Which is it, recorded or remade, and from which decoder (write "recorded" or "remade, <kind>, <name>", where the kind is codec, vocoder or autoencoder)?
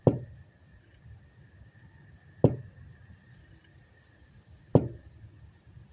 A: recorded